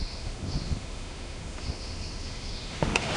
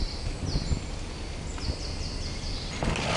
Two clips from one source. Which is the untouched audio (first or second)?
second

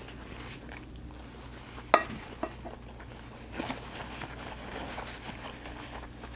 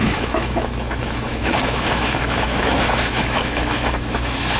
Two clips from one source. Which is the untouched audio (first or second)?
first